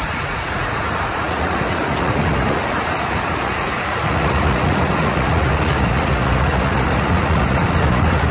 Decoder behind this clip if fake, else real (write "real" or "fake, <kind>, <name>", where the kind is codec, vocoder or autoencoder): fake, vocoder, Vocos